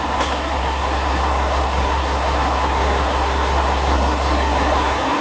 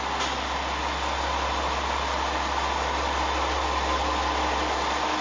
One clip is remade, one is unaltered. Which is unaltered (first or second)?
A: second